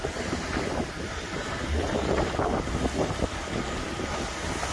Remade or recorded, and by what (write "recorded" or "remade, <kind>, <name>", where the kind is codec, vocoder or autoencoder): recorded